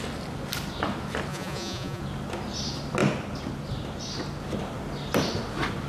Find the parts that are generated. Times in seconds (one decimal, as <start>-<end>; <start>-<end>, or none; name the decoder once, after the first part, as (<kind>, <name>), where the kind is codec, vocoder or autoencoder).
1.3-2.0 (vocoder, Vocos)